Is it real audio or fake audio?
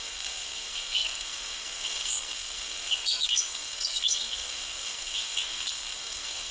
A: fake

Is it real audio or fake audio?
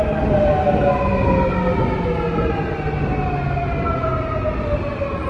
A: real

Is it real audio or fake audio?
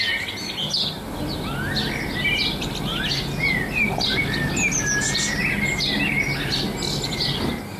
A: real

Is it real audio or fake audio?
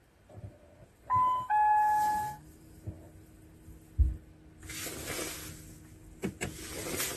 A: real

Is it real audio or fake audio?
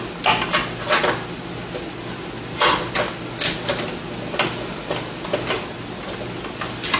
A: real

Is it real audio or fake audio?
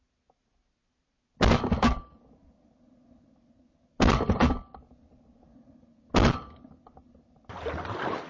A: real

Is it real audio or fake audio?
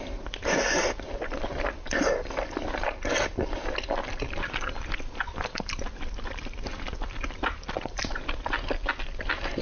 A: real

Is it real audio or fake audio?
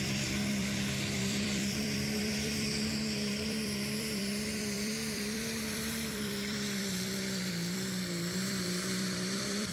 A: fake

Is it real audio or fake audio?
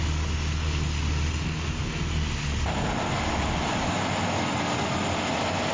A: real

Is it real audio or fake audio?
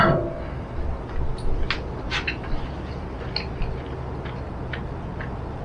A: real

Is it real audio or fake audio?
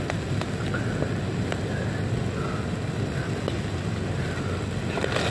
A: real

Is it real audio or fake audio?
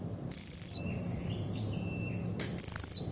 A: real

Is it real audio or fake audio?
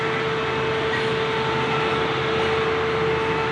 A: real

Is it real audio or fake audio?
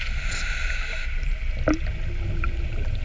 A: real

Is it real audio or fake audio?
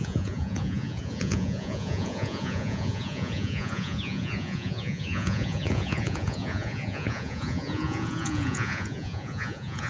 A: fake